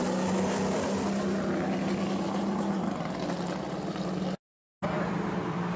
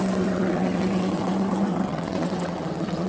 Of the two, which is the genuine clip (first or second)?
first